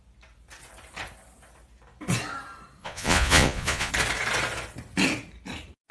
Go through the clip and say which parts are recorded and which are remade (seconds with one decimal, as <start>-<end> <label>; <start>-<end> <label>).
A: 0.0-2.8 recorded; 2.8-3.9 remade; 3.9-5.9 recorded